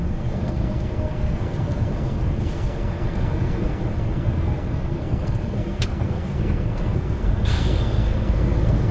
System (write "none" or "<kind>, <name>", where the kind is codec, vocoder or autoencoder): codec, SNAC